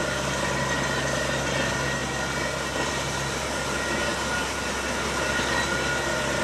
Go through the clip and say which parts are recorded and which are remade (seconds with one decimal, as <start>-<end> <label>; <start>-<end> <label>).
0.0-6.4 recorded